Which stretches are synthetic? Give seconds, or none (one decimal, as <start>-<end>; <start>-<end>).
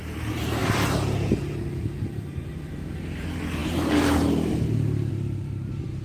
0.0-6.0